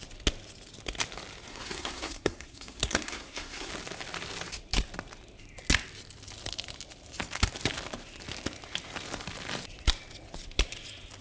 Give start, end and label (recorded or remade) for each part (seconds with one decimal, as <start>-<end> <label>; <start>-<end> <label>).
0.0-1.5 recorded; 1.5-3.7 remade; 3.7-11.2 recorded